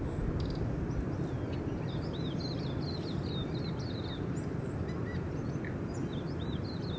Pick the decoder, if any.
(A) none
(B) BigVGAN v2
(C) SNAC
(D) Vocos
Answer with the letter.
A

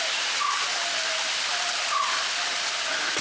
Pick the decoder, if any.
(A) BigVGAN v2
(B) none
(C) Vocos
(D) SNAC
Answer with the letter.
B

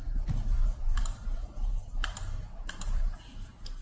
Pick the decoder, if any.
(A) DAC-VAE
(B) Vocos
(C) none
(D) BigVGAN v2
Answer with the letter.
D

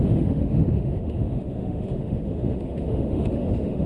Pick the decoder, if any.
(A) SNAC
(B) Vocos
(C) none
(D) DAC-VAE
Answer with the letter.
D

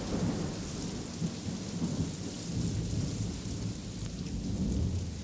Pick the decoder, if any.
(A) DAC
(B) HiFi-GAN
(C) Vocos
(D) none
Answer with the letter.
D